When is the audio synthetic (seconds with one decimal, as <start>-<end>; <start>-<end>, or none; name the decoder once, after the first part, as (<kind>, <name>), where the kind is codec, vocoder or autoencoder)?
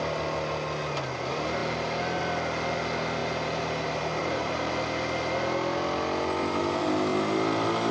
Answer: 3.2-4.7 (vocoder, BigVGAN v2)